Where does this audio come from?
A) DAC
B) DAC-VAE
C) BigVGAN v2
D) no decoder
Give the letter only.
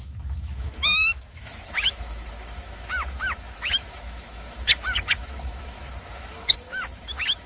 B